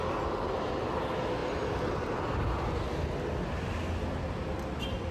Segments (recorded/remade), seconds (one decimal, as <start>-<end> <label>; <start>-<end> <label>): 0.0-5.1 recorded